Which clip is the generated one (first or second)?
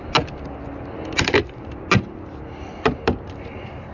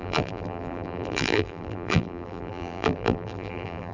second